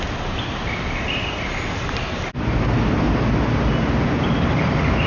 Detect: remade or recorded recorded